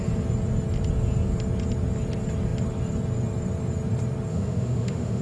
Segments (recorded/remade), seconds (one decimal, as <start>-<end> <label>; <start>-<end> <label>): 0.0-4.3 recorded; 4.3-5.2 remade